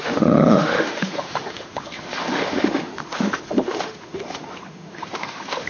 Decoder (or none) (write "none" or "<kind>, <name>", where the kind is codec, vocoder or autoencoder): autoencoder, DAC-VAE